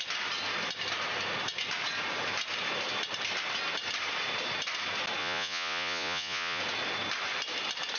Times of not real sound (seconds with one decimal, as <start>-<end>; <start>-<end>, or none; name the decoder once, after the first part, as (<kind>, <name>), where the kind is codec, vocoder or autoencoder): 5.2-6.6 (vocoder, Vocos)